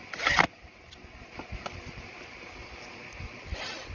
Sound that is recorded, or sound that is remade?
recorded